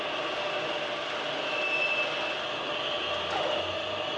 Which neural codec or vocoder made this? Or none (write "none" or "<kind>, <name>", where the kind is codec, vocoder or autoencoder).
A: none